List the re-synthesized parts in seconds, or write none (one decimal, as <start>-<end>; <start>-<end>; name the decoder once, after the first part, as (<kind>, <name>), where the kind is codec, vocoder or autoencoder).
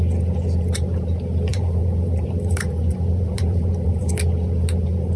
1.5-4.0 (vocoder, BigVGAN v2)